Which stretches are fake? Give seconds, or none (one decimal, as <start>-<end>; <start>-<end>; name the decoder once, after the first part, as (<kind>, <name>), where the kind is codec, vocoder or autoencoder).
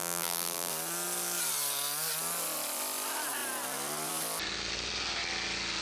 0.0-0.7 (vocoder, BigVGAN v2)